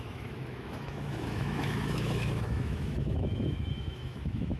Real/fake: fake